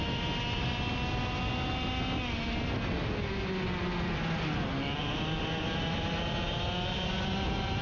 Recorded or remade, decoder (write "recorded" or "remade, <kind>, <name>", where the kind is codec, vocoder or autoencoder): recorded